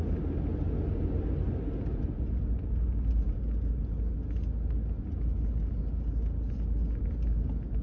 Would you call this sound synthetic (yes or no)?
no